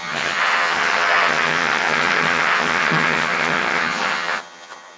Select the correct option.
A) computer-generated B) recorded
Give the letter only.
A